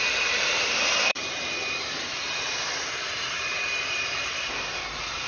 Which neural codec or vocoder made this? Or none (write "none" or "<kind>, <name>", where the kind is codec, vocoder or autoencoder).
vocoder, BigVGAN v2